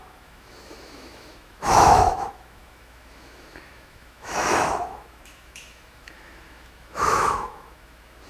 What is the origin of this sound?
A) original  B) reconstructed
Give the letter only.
B